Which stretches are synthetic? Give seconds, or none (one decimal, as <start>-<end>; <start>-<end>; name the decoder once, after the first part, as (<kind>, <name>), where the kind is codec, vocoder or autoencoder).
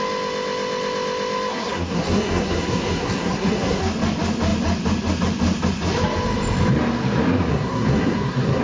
1.5-3.8 (codec, SNAC); 7.5-8.6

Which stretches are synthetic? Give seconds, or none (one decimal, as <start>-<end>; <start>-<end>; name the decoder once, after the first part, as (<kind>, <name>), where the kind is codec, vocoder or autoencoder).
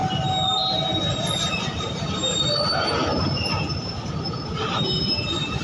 3.1-5.6 (vocoder, BigVGAN v2)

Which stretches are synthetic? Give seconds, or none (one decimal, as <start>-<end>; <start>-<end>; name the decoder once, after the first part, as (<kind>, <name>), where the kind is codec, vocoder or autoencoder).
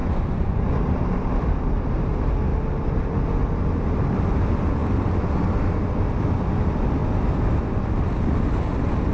0.0-0.8 (vocoder, Vocos)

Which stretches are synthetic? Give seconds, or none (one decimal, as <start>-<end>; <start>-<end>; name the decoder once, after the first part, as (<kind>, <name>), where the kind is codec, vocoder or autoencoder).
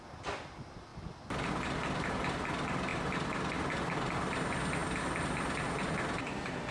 none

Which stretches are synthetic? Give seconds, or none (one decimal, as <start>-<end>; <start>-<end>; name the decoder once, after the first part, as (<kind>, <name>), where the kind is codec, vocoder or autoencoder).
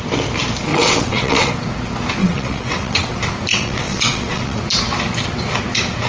0.7-1.5 (vocoder, WaveNeXt); 2.2-3.1; 3.5-4.6